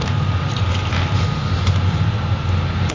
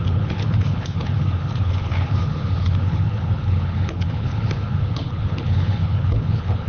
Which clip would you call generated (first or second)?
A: second